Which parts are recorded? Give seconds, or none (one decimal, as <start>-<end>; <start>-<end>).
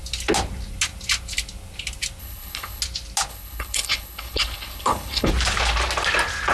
0.0-2.2; 2.8-3.3; 5.3-6.5